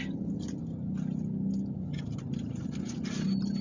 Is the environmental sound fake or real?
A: real